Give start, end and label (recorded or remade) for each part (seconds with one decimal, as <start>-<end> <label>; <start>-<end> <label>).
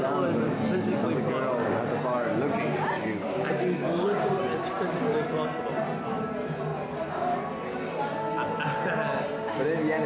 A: 0.0-3.0 recorded; 3.0-4.3 remade; 4.3-10.1 recorded